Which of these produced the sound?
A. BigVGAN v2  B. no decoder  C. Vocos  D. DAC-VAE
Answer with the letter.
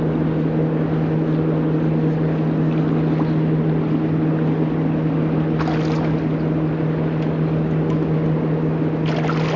B